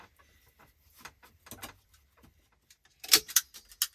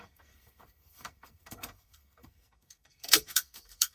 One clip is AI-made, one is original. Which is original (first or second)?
first